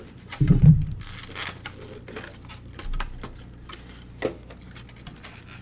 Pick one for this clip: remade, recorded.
recorded